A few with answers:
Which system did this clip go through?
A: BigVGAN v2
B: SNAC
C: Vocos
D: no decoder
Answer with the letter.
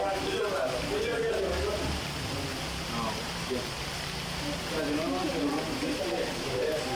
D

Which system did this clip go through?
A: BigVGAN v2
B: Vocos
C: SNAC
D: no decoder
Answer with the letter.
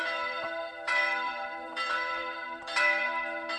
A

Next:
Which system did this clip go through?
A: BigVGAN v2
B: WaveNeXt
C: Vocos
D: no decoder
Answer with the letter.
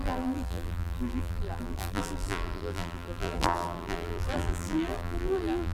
A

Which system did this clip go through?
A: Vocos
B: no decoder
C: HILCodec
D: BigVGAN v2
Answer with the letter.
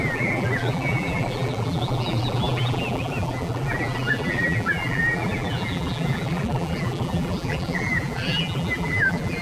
D